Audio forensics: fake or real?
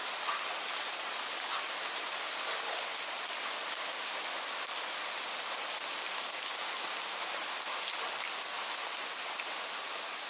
real